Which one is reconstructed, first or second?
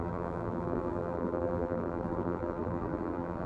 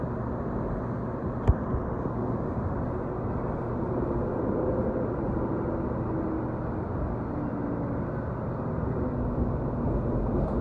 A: first